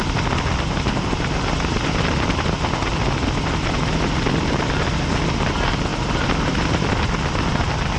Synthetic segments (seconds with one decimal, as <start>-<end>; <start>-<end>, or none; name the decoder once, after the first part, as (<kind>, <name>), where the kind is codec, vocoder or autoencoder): none